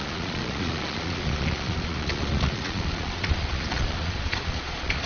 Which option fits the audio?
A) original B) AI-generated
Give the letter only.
B